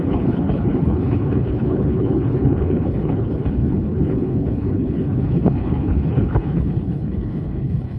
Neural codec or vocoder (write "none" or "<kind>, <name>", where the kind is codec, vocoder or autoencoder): codec, HILCodec